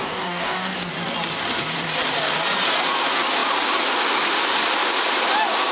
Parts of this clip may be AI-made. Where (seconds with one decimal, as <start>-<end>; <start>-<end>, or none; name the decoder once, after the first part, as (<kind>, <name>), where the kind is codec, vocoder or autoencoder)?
0.0-0.9 (codec, DAC)